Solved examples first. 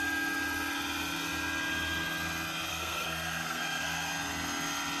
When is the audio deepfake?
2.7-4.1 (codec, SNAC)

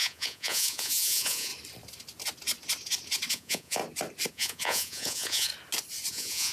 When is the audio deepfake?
0.0-1.5 (vocoder, Vocos); 3.3-3.8; 4.3-5.5; 6.1-6.5

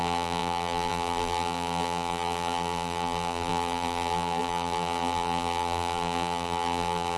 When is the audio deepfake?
0.0-7.2 (vocoder, BigVGAN v2)

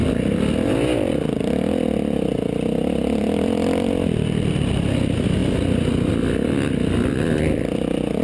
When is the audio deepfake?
none

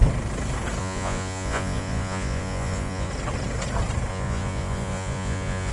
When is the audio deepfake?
0.8-3.1 (vocoder, Vocos); 4.1-5.7

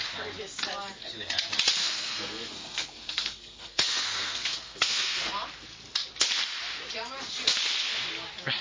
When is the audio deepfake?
1.8-5.3 (codec, SNAC)